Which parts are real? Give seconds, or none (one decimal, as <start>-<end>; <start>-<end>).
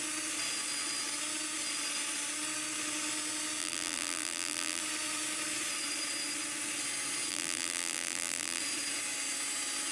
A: 0.0-3.6; 4.8-7.3; 8.6-9.9